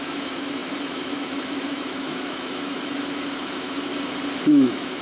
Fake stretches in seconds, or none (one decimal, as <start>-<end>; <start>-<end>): 0.0-3.9; 4.5-5.0